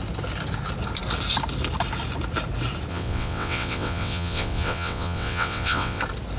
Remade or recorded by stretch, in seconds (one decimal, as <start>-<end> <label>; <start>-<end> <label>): 0.0-2.9 recorded; 2.9-6.0 remade; 6.0-6.4 recorded